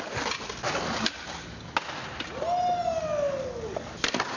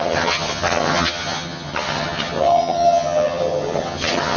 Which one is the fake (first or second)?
second